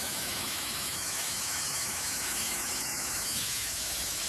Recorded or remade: remade